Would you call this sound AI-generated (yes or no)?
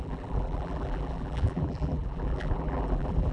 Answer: yes